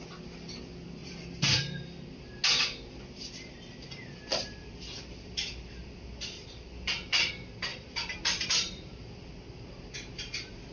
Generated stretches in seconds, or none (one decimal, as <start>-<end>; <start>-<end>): 1.0-2.3; 3.2-3.9; 4.3-7.3; 7.7-9.3